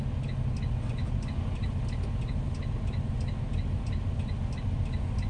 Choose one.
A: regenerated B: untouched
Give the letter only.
B